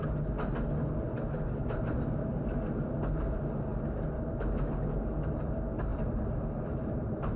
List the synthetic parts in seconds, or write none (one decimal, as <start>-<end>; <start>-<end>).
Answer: 5.9-7.4